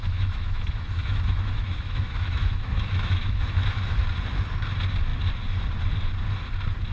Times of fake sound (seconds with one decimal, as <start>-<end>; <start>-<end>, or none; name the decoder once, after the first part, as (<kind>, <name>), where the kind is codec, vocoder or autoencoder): 0.0-4.0 (autoencoder, DAC-VAE)